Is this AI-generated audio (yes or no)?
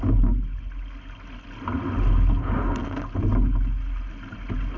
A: no